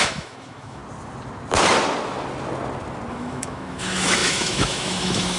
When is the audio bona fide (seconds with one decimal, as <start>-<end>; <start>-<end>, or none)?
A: 0.8-3.1